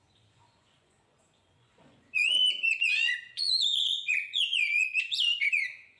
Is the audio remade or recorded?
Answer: remade